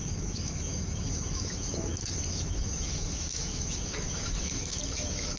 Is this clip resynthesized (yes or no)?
yes